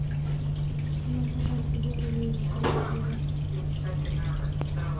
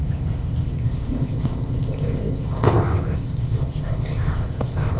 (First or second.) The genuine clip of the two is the first